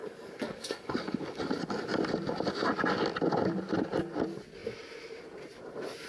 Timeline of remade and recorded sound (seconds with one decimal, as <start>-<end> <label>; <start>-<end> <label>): 0.0-1.4 remade; 1.4-6.1 recorded